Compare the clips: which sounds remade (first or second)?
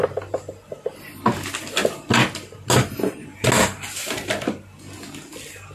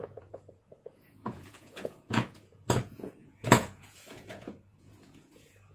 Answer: second